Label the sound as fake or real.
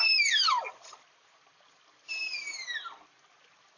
real